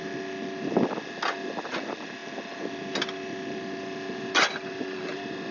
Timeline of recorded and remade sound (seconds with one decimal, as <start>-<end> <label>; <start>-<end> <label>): 0.0-5.5 recorded